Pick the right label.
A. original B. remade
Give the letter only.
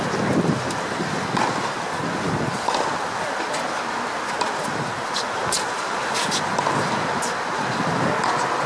A